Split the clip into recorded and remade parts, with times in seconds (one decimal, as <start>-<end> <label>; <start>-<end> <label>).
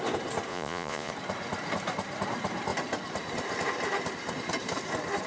0.0-0.5 recorded; 0.5-1.1 remade; 1.1-5.3 recorded